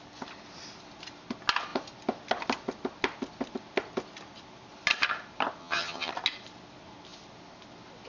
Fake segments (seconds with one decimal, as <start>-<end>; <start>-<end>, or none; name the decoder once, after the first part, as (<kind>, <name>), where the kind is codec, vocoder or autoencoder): 5.6-6.1 (vocoder, HiFi-GAN)